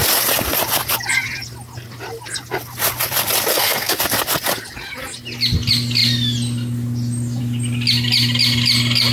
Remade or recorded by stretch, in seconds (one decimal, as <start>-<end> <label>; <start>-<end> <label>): 0.0-3.5 recorded; 3.5-4.0 remade; 4.0-9.1 recorded